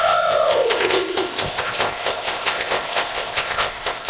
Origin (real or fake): fake